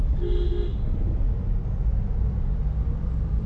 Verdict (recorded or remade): recorded